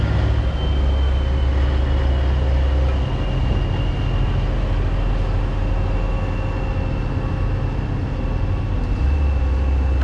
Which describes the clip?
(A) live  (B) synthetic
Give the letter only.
A